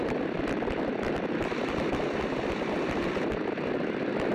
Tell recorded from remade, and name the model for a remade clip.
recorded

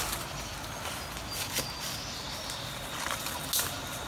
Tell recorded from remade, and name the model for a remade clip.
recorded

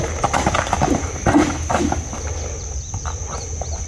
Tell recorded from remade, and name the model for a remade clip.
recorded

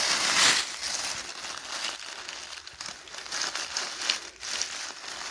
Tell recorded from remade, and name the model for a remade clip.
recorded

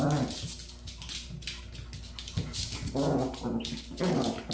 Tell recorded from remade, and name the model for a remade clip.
recorded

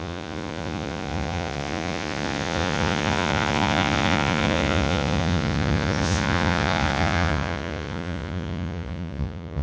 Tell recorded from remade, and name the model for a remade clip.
remade, vocoder, Vocos